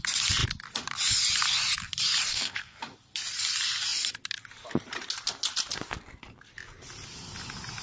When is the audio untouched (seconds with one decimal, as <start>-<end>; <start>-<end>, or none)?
0.0-2.3; 2.8-7.8